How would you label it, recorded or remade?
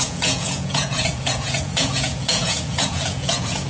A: remade